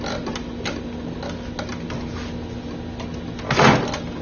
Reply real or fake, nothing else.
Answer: real